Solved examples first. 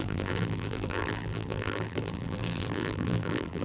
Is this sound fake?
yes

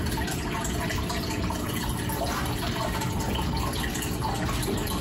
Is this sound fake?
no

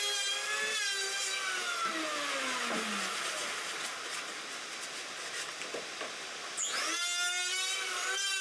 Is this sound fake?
no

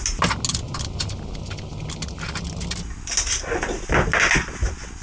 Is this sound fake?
no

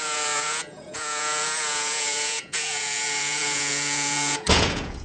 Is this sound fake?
yes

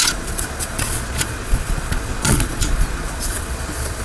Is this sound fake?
yes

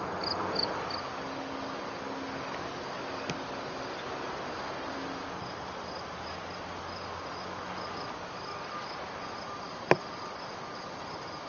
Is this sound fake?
no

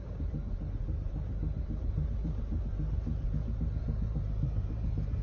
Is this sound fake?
yes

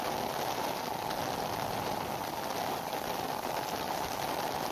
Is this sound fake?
no